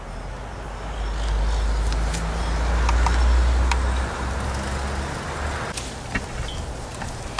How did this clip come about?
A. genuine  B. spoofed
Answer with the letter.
A